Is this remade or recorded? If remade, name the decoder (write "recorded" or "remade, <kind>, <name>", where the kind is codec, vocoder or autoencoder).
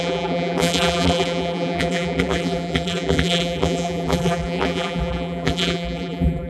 remade, vocoder, BigVGAN v2